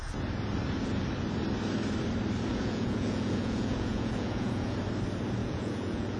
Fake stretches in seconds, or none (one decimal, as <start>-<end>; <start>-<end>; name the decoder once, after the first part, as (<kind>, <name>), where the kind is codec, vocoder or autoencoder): 2.5-4.8 (vocoder, Vocos); 5.4-6.2